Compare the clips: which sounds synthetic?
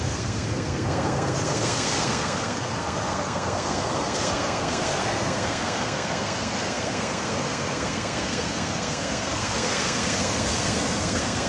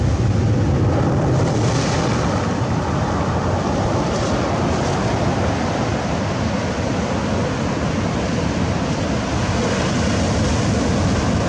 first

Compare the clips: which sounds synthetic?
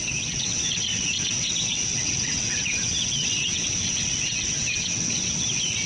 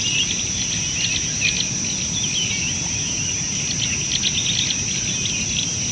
first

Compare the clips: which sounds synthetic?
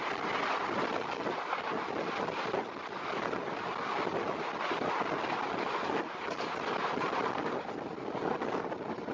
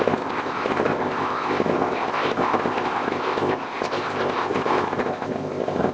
second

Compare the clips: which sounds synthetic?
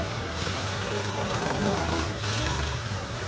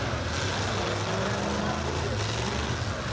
first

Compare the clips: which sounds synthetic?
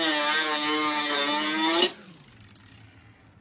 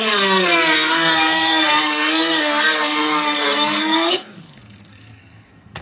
second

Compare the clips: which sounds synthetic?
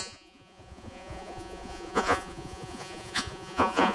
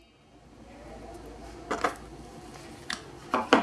first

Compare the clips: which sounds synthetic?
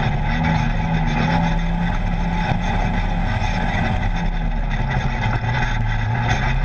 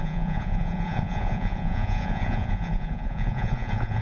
second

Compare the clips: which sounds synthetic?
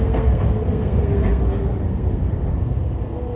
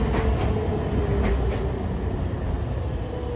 first